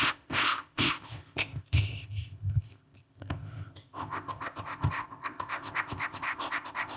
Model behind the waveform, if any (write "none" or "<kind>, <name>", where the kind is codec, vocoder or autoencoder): codec, ZipCodec